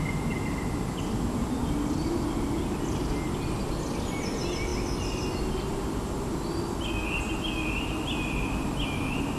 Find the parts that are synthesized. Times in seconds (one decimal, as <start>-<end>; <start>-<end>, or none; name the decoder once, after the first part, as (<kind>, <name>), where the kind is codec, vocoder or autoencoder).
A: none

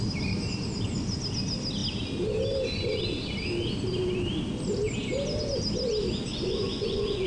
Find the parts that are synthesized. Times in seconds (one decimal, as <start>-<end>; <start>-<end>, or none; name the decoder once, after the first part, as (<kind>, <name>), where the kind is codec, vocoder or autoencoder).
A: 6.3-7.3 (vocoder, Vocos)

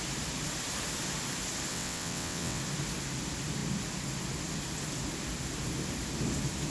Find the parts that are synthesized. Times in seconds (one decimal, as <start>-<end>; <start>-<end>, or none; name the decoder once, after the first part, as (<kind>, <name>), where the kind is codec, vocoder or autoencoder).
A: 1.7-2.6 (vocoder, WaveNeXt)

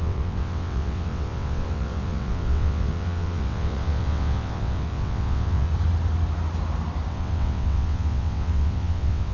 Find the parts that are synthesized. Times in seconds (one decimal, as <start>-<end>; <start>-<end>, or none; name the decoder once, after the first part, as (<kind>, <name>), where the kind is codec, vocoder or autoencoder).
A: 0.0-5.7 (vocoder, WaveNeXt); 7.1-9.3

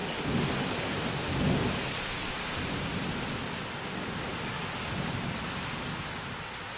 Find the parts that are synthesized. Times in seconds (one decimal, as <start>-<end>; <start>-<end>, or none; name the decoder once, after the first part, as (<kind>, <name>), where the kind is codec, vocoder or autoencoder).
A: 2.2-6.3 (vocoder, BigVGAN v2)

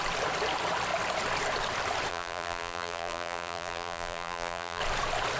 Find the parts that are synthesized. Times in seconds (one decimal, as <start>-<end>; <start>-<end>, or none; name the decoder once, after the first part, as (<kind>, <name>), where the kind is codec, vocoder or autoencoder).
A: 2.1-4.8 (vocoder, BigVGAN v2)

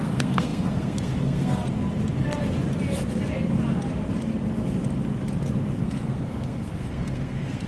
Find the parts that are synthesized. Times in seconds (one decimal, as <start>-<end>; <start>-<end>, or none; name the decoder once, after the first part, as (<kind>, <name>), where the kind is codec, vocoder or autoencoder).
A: 0.0-1.6 (codec, SNAC); 5.8-7.7